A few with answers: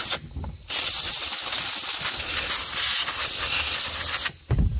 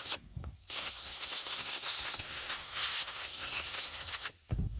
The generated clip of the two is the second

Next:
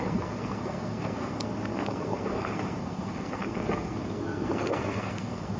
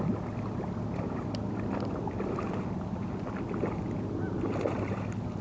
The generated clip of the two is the first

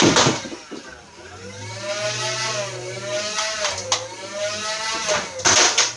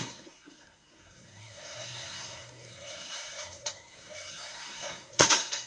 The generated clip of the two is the second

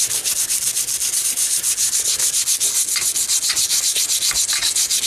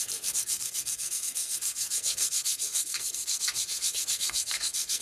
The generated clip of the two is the second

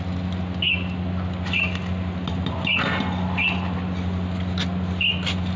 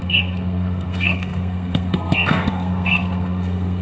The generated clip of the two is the second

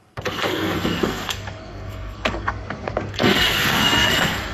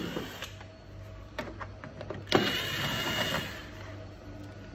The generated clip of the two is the first